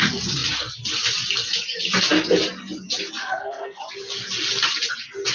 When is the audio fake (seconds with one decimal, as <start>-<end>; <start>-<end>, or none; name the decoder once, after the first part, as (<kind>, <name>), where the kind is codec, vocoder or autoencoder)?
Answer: 3.2-3.8 (codec, SNAC)